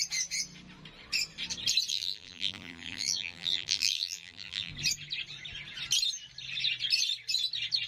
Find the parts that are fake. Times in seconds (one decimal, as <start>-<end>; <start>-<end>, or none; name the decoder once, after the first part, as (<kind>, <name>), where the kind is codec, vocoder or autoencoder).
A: 1.9-4.7 (vocoder, BigVGAN v2)

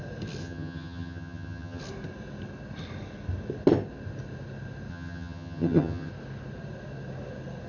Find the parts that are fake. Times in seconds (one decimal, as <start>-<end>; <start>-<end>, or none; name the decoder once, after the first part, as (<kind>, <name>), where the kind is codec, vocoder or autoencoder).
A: 0.4-1.8 (vocoder, HiFi-GAN); 4.9-6.1

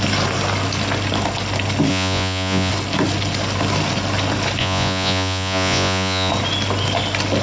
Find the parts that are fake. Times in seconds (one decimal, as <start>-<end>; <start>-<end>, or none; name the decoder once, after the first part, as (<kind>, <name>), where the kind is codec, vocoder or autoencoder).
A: 1.9-2.7 (vocoder, Vocos); 4.6-6.3

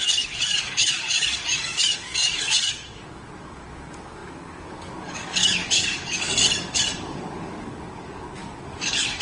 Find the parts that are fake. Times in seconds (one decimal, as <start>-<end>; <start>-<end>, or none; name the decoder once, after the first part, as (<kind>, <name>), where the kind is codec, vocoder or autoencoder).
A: 0.0-9.2 (codec, DAC)

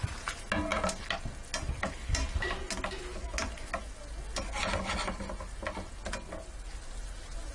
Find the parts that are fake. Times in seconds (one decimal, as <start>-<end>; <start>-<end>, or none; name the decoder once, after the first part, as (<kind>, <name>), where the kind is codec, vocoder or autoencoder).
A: none